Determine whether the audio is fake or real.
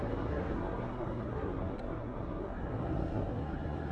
fake